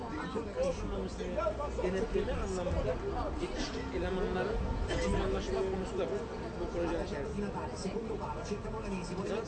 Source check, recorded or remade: recorded